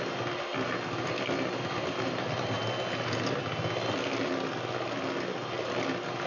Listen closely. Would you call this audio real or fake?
real